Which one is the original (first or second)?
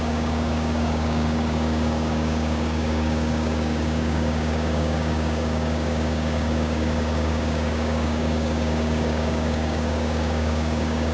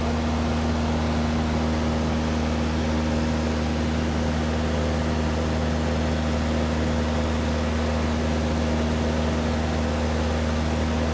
second